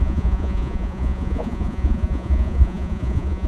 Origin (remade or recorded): remade